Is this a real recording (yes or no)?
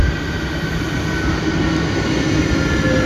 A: yes